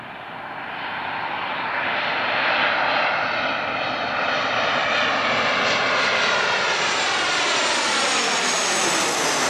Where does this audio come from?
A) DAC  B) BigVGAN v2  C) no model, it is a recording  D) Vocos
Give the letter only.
C